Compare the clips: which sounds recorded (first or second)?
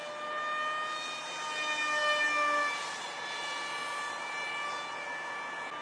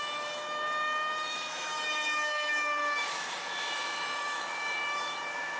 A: first